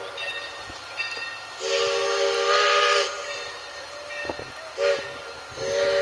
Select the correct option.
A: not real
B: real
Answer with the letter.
B